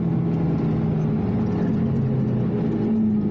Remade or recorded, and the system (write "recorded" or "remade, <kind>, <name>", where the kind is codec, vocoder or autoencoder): recorded